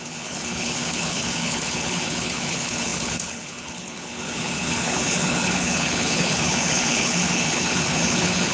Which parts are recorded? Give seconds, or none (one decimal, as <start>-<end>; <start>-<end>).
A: none